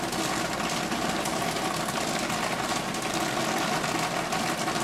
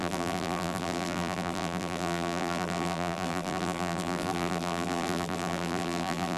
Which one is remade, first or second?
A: second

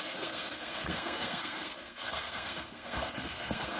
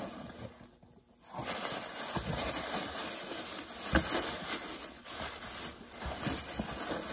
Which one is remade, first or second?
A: first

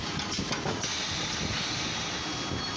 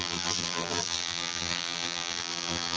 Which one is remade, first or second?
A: second